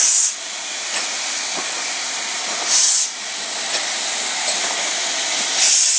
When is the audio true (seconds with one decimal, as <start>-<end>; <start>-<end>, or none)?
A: 0.0-6.0